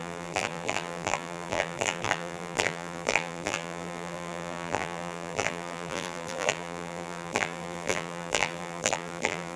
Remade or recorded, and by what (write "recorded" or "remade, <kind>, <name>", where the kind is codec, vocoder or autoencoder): remade, vocoder, BigVGAN v2